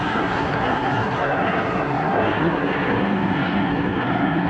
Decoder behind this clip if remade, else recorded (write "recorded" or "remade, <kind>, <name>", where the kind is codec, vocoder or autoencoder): remade, codec, SNAC